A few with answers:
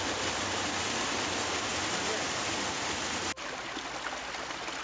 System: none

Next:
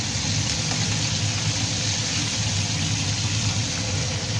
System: none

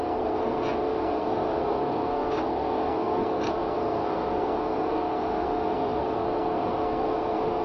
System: codec, SNAC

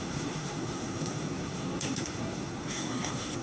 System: codec, SNAC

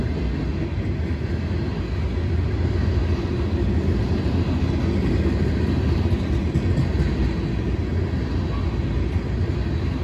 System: none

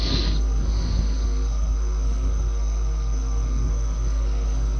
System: codec, SNAC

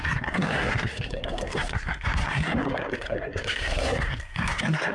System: codec, SNAC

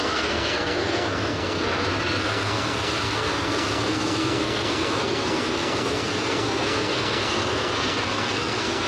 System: codec, SNAC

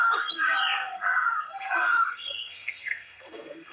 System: codec, SNAC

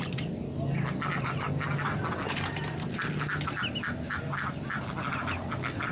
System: none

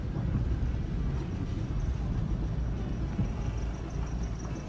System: none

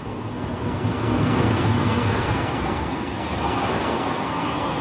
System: codec, SNAC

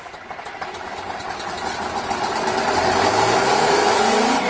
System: none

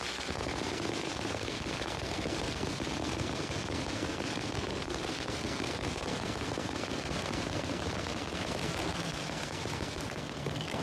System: codec, SNAC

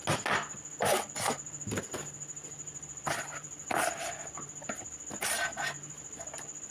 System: none